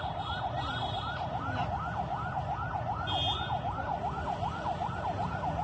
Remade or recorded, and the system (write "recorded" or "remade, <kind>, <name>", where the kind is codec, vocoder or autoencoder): recorded